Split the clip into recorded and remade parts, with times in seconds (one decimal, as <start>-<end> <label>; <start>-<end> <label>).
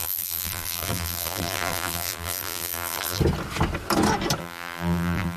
0.0-3.2 remade; 3.2-4.4 recorded; 4.4-5.4 remade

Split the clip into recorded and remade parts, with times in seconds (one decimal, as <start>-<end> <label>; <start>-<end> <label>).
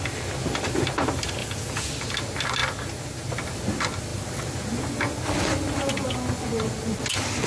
0.0-1.4 recorded; 1.4-1.9 remade; 1.9-7.5 recorded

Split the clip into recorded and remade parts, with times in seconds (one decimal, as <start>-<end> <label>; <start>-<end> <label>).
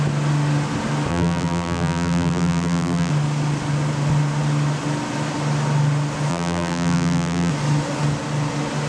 0.0-1.1 recorded; 1.1-3.1 remade; 3.1-6.3 recorded; 6.3-7.5 remade; 7.5-8.9 recorded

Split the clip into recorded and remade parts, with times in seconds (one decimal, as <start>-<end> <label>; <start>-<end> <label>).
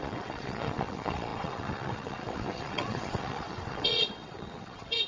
0.0-5.1 remade